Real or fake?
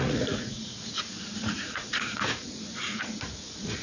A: fake